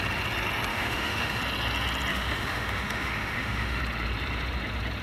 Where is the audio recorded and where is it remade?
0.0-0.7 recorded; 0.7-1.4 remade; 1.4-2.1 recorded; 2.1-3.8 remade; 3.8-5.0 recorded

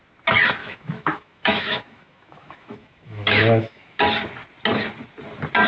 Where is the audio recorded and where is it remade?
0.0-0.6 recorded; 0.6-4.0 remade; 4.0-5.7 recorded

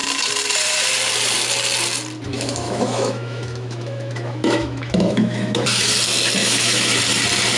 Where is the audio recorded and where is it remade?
0.0-2.3 recorded; 2.3-5.9 remade; 5.9-6.4 recorded; 6.4-7.0 remade; 7.0-7.6 recorded